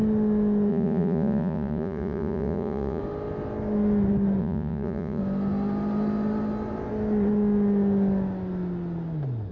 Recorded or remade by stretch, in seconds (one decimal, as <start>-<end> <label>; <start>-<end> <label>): 0.0-0.7 recorded; 0.7-3.0 remade; 3.0-4.4 recorded; 4.4-5.2 remade; 5.2-9.5 recorded